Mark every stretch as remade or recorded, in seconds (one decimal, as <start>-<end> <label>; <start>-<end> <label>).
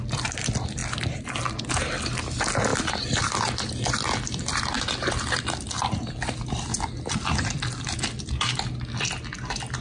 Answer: 0.0-9.8 recorded